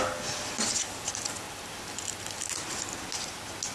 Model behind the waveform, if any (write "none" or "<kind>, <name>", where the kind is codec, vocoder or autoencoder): none